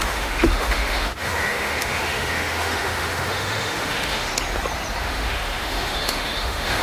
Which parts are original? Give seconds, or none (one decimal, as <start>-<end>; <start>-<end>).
4.3-5.0